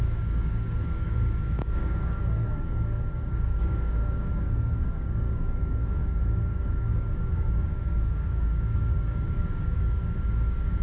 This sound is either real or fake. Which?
fake